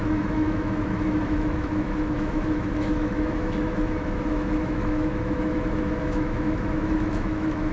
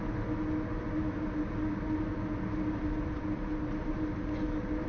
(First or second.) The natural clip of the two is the second